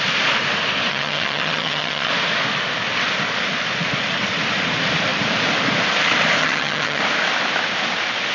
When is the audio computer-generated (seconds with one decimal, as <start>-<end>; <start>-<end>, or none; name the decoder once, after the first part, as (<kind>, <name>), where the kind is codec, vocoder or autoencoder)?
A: 0.9-2.1 (vocoder, HiFi-GAN); 6.4-7.0